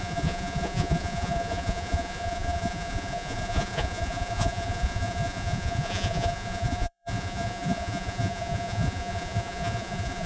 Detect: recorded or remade remade